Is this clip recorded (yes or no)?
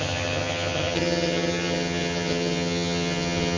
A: no